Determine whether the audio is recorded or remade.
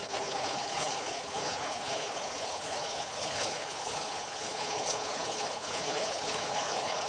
remade